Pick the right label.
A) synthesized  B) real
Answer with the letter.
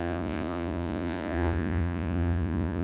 A